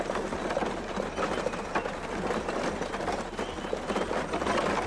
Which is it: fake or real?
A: real